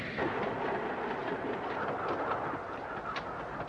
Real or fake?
real